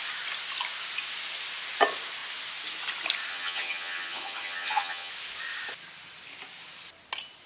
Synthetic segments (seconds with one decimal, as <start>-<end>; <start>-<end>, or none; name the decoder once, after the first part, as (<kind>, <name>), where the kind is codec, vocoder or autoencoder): 3.3-5.1 (vocoder, HiFi-GAN)